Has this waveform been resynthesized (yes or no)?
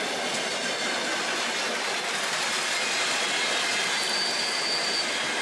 no